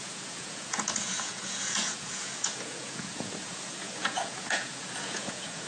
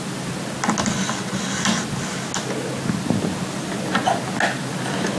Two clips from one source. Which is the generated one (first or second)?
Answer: first